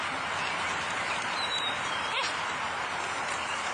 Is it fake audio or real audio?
fake